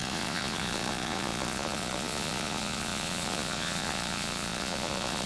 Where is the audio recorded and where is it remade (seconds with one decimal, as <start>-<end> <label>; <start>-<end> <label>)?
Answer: 0.0-5.3 remade